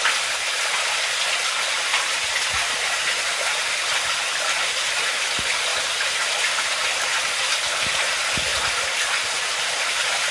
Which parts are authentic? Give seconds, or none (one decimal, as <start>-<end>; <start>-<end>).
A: 0.0-1.9; 3.4-10.3